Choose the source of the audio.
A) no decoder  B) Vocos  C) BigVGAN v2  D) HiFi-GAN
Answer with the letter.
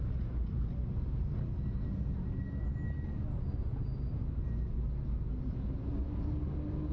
A